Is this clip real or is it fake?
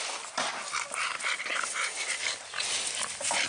real